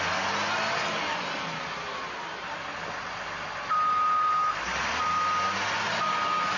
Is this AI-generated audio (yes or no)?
no